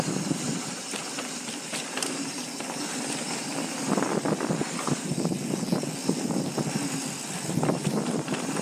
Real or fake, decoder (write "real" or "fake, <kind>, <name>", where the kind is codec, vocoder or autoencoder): real